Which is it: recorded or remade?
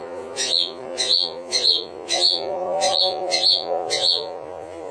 remade